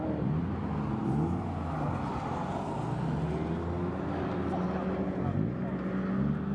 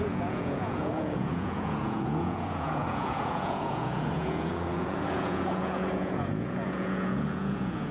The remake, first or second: second